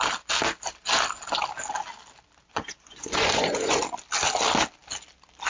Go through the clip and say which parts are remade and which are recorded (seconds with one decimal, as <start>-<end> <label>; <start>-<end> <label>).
0.0-2.5 recorded; 2.5-3.8 remade; 3.8-5.5 recorded